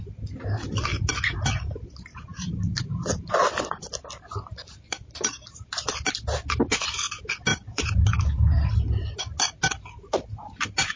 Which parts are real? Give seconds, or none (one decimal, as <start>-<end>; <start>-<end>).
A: 0.0-2.1; 6.0-7.5; 8.7-11.0